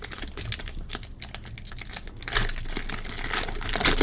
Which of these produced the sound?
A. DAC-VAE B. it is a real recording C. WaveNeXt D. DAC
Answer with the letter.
B